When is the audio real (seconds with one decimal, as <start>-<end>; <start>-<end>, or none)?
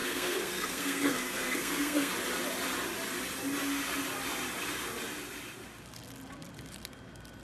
2.1-7.4